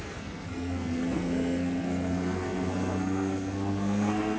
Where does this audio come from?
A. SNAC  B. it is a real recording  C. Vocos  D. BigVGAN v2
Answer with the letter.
A